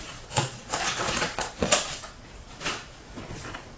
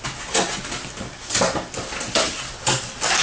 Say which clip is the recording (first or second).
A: second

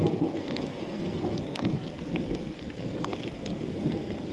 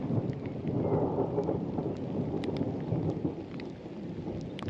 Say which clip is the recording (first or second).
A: second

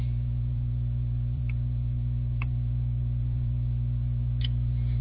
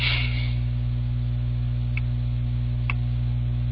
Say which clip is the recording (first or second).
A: second